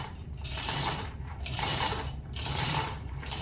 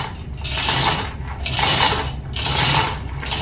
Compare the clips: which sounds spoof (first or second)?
first